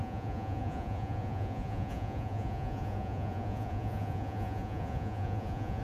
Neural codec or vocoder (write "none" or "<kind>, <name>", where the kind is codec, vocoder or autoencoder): vocoder, Vocos